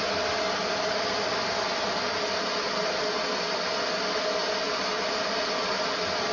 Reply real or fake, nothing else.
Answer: real